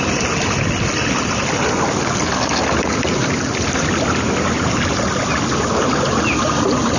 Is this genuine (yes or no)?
yes